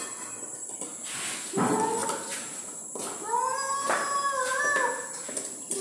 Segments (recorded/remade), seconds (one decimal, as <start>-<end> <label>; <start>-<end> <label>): 0.0-2.0 recorded; 2.0-4.6 remade; 4.6-5.8 recorded